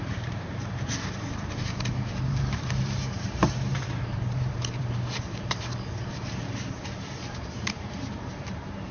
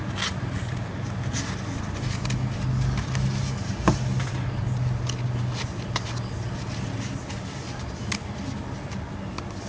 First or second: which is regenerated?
first